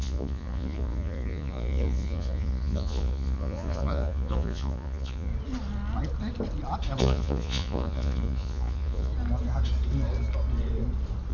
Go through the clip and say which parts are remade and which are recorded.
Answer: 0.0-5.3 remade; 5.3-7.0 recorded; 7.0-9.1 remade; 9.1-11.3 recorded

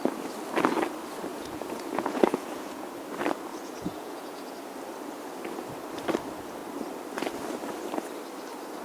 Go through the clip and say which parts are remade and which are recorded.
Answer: 0.0-1.3 recorded; 1.3-2.9 remade; 2.9-3.5 recorded; 3.5-4.5 remade; 4.5-8.8 recorded